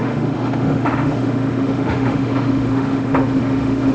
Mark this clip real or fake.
fake